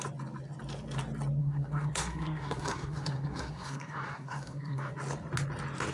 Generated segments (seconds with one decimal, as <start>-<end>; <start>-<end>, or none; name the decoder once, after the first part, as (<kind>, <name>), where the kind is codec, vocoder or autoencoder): 1.4-4.9 (codec, SNAC)